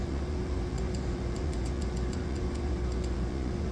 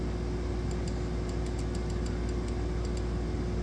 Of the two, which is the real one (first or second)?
second